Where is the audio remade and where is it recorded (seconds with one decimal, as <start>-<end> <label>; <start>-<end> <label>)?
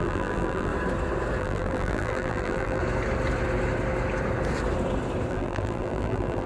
0.0-0.7 remade; 0.7-1.4 recorded; 1.4-2.8 remade; 2.8-5.3 recorded; 5.3-6.5 remade